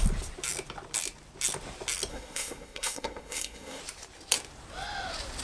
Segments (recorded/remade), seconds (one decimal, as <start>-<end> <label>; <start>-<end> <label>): 0.0-2.1 recorded; 2.1-3.8 remade; 3.8-5.4 recorded

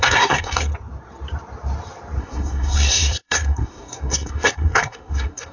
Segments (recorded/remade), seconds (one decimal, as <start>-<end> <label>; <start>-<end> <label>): 0.0-0.7 remade; 0.7-2.2 recorded; 2.2-5.5 remade

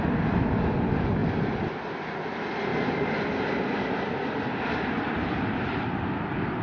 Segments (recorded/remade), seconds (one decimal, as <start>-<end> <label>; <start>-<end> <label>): 0.0-1.2 remade; 1.2-2.3 recorded; 2.3-6.6 remade

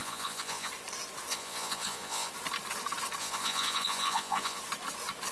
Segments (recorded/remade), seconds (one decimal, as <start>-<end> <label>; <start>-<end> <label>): 0.0-0.7 remade; 0.7-1.3 recorded; 1.3-2.3 remade; 2.3-3.2 recorded; 3.2-4.6 remade; 4.6-5.3 recorded

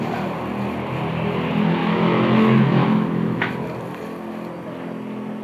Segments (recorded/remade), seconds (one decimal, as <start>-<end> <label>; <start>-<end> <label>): 0.0-1.8 recorded; 1.8-3.5 remade; 3.5-5.4 recorded

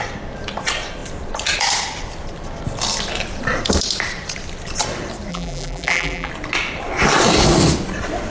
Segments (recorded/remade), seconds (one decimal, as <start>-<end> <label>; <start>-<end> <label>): 0.0-5.3 recorded; 5.3-6.3 remade; 6.3-8.3 recorded

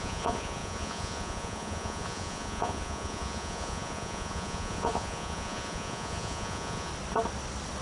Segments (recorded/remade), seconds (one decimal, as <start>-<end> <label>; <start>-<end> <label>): 0.0-6.9 remade; 6.9-7.8 recorded